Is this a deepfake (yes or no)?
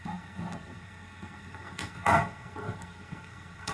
yes